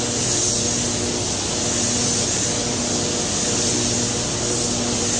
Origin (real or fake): real